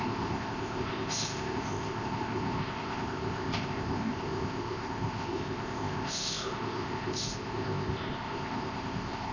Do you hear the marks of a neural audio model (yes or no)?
yes